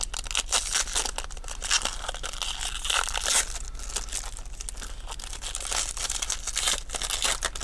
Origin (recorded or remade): recorded